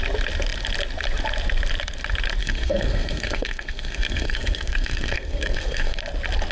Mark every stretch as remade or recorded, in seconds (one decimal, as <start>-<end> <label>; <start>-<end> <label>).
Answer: 0.0-2.4 recorded; 2.4-6.0 remade; 6.0-6.5 recorded